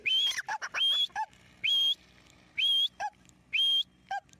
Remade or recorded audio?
recorded